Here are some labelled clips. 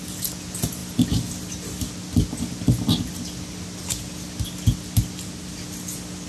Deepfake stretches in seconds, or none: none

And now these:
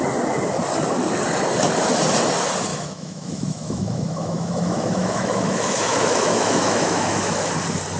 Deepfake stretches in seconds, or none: 2.7-7.5 (autoencoder, DAC-VAE)

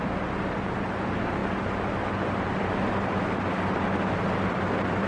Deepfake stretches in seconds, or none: none

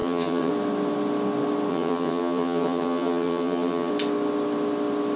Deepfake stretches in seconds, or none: 0.0-0.5 (vocoder, HiFi-GAN); 1.7-3.9

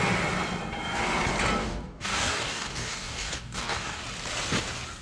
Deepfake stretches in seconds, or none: 1.6-4.0 (codec, DAC)